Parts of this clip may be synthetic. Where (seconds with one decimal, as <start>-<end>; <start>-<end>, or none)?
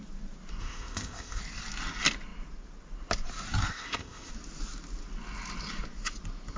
0.6-1.4; 3.7-4.3